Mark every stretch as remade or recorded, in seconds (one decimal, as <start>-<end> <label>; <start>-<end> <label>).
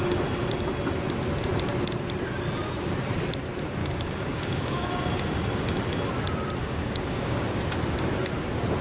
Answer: 0.0-3.8 recorded; 3.8-4.9 remade; 4.9-6.6 recorded; 6.6-7.4 remade; 7.4-8.8 recorded